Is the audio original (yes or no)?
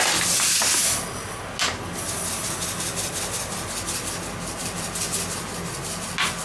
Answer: yes